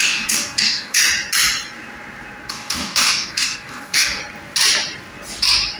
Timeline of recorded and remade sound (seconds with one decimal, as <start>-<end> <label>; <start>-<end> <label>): 0.0-1.0 remade; 1.0-2.5 recorded; 2.5-4.2 remade; 4.2-5.8 recorded